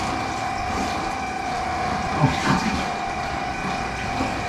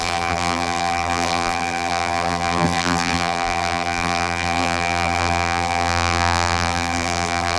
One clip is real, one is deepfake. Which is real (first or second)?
first